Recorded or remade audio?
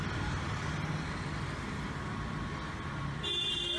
recorded